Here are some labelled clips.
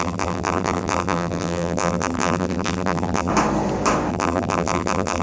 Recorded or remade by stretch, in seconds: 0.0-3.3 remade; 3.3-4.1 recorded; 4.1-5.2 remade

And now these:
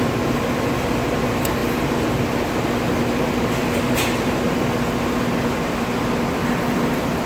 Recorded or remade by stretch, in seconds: 0.0-7.3 recorded

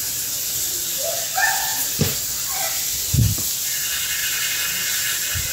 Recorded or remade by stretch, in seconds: 0.0-1.7 recorded; 1.7-2.4 remade; 2.4-4.2 recorded; 4.2-4.7 remade; 4.7-5.5 recorded

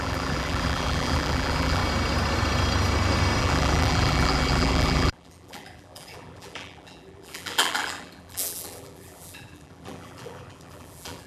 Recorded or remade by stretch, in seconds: 0.0-1.8 remade; 1.8-3.4 recorded; 3.4-11.3 remade